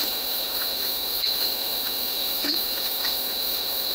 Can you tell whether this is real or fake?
fake